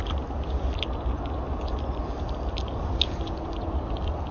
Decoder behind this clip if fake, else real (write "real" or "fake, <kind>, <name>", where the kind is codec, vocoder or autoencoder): real